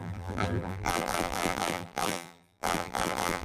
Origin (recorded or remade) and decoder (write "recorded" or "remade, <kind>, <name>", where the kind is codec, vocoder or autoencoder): remade, vocoder, BigVGAN v2